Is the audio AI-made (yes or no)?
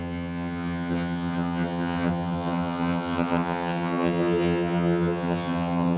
yes